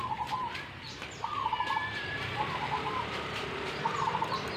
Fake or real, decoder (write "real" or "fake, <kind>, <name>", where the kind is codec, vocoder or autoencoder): fake, vocoder, BigVGAN v2